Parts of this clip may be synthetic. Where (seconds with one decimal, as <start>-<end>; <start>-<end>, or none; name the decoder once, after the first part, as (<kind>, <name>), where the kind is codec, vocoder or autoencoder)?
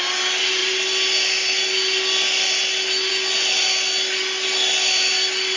none